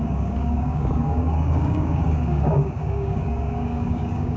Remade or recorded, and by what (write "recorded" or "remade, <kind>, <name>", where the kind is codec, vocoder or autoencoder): remade, codec, DAC